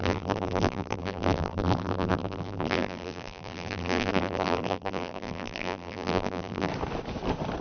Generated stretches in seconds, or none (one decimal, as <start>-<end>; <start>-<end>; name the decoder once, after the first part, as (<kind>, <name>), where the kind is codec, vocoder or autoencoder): 0.0-6.7 (vocoder, BigVGAN v2)